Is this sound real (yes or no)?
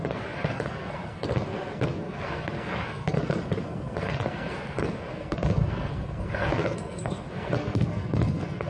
no